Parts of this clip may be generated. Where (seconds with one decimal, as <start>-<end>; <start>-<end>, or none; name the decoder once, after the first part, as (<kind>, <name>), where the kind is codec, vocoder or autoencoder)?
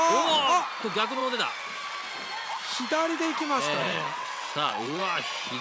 3.8-5.0 (vocoder, WaveNeXt)